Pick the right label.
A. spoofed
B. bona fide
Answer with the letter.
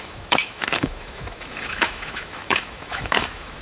A